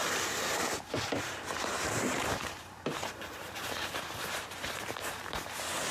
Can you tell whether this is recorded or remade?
remade